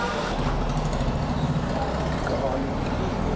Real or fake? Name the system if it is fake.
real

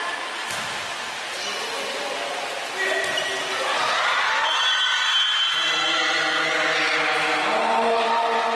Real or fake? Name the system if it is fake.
real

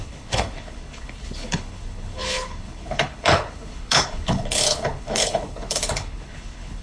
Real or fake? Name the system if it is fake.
fake, codec, HILCodec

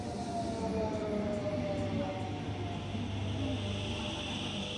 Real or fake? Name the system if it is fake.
real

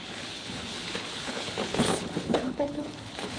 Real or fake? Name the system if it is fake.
fake, codec, HILCodec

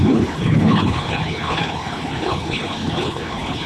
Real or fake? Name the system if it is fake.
fake, codec, HILCodec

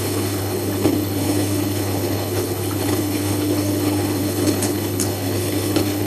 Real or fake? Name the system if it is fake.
fake, codec, HILCodec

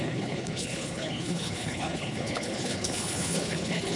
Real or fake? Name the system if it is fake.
fake, codec, HILCodec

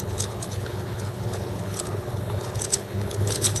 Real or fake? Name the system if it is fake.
fake, codec, HILCodec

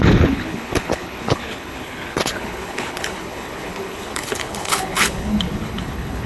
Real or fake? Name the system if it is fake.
fake, codec, HILCodec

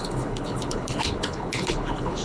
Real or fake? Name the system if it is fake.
fake, codec, HILCodec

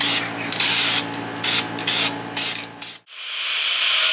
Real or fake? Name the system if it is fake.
real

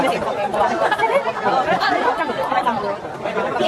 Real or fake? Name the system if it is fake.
real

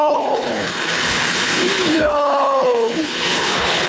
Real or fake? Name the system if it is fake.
fake, codec, HILCodec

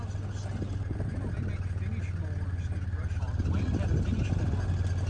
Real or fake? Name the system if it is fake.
real